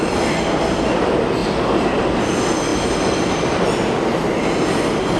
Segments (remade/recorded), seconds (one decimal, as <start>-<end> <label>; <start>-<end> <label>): 0.0-5.2 recorded